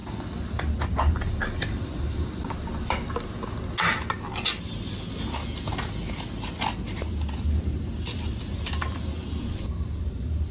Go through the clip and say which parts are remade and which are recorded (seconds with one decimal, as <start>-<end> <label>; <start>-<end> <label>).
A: 0.0-10.5 recorded